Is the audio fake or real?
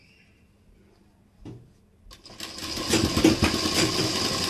real